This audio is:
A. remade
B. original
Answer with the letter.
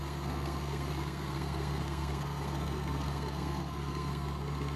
A